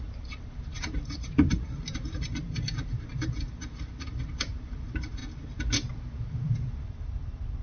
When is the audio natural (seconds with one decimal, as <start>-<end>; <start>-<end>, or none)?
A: 5.2-5.9

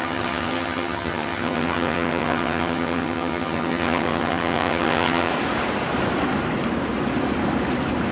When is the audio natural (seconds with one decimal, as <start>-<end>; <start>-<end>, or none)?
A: 5.3-8.1

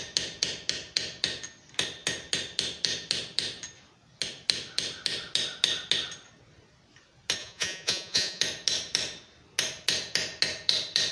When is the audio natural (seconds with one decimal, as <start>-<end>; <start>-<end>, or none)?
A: 0.0-7.4; 8.4-11.1

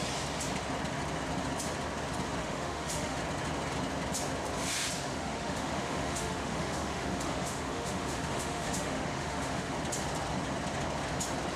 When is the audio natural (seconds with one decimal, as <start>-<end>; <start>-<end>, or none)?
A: 0.0-2.4; 3.2-5.1; 9.7-11.6

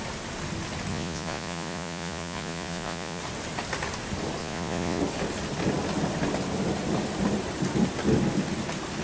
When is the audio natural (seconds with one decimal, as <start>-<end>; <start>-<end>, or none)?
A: 0.0-0.9; 3.2-4.4; 5.0-9.0

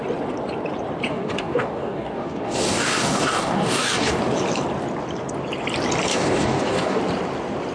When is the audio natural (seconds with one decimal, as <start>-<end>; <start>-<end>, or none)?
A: 0.0-1.1; 4.2-6.1; 7.0-7.7

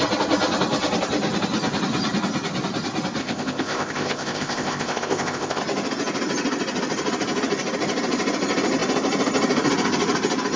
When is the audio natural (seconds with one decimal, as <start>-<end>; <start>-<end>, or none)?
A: 0.0-3.2; 5.6-10.6

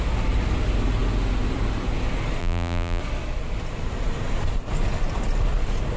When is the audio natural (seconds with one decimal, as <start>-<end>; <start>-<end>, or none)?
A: 0.0-2.4; 3.0-6.0